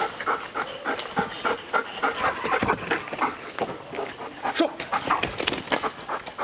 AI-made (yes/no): no